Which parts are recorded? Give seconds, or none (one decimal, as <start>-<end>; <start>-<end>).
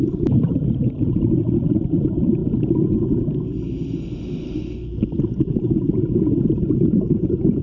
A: 2.4-7.0